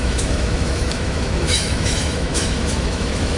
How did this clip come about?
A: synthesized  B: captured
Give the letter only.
A